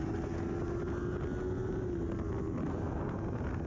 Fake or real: real